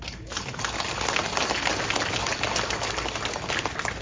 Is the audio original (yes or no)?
yes